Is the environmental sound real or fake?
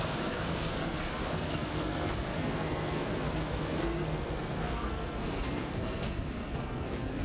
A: fake